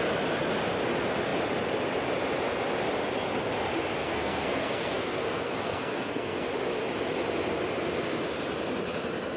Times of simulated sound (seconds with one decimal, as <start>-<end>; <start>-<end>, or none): 4.0-6.5

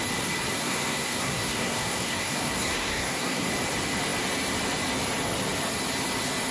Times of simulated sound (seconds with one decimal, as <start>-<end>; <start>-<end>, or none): 0.5-3.5

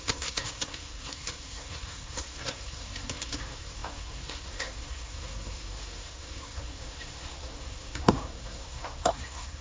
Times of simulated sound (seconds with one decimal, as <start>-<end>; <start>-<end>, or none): 0.0-9.6

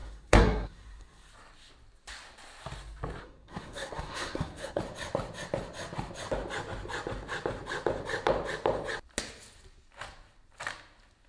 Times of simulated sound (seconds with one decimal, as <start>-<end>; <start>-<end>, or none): 0.0-1.3; 3.2-4.8

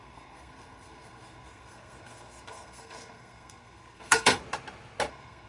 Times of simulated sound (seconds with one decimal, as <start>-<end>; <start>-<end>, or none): 0.0-4.4; 5.1-5.5

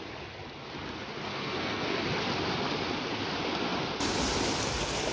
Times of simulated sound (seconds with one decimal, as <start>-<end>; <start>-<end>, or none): 1.3-2.0

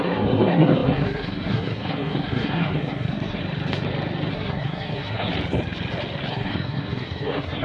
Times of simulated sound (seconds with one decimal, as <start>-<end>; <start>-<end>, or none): 0.0-3.4; 4.3-5.3; 6.3-7.6